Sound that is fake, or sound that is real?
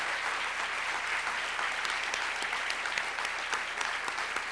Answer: real